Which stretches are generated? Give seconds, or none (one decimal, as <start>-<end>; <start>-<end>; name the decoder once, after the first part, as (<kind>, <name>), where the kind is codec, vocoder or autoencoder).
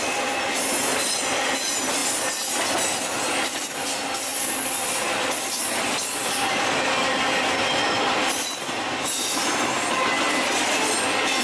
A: none